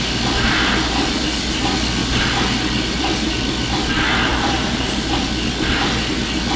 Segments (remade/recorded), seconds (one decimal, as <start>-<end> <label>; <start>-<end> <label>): 0.0-4.3 recorded; 4.3-5.2 remade; 5.2-6.6 recorded